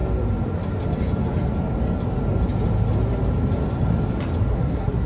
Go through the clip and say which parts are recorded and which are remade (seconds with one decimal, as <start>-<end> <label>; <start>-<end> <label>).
0.0-4.5 recorded; 4.5-5.1 remade